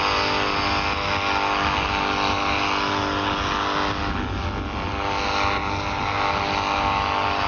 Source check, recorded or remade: recorded